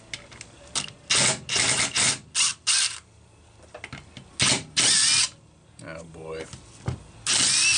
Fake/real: real